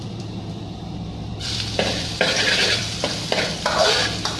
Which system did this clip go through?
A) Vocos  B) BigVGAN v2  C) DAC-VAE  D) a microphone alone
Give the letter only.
B